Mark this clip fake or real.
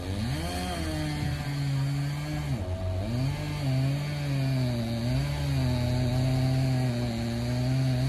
real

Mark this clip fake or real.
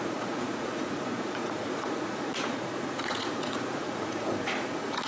fake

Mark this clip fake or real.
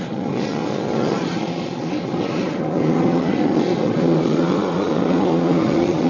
fake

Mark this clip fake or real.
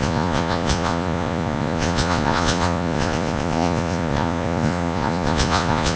fake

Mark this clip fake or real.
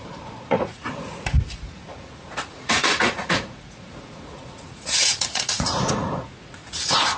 fake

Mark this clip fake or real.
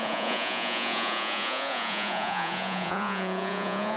fake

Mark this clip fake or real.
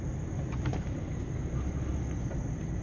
real